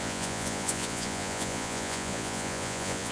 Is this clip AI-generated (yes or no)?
yes